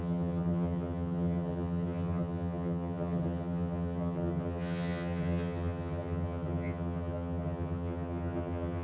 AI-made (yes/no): yes